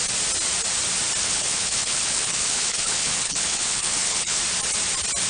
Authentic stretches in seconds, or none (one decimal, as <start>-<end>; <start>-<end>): 0.0-1.2; 4.4-5.3